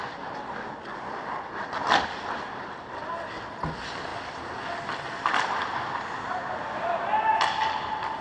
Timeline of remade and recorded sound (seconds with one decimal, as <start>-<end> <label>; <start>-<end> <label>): 0.0-8.2 recorded